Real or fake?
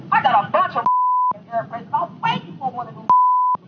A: real